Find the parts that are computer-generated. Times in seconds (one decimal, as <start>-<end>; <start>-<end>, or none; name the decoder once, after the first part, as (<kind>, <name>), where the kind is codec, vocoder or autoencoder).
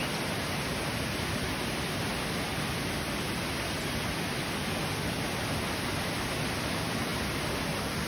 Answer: none